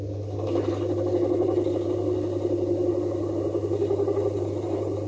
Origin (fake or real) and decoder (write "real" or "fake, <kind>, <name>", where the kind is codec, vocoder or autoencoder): real